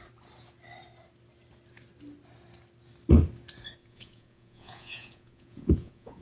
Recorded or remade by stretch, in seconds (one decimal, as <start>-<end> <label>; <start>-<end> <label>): 0.0-3.8 recorded; 3.8-6.2 remade